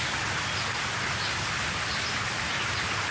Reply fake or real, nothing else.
real